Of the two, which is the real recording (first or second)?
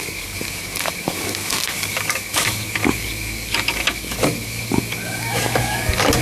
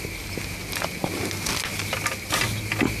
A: second